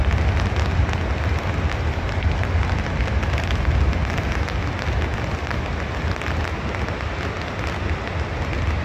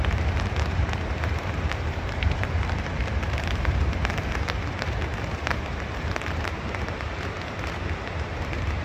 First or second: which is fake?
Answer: second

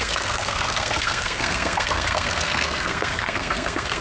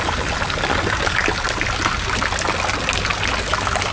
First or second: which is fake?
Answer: first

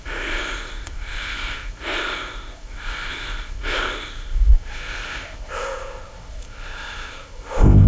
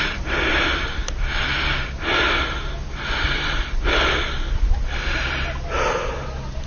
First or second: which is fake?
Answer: first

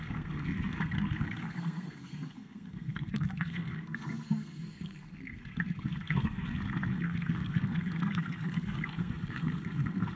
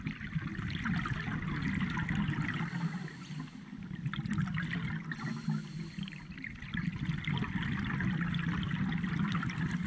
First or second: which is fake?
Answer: first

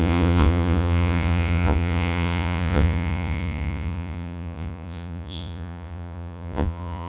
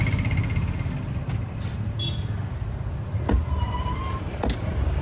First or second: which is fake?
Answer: first